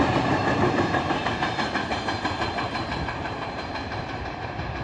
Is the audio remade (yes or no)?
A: yes